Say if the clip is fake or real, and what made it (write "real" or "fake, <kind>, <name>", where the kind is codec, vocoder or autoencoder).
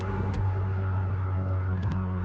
fake, codec, SNAC